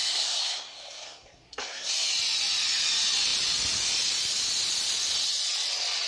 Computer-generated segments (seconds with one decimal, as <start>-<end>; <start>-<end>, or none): 0.0-1.9